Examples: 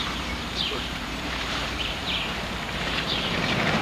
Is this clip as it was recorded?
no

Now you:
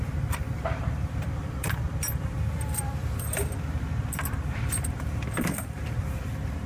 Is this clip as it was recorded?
no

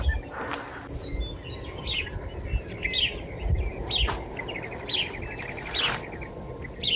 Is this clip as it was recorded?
yes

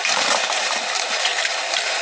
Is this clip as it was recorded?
no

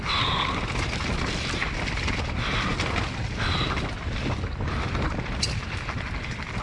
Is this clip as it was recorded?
yes